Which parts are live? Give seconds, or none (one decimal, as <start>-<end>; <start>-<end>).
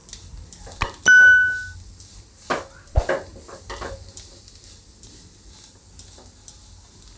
0.0-7.2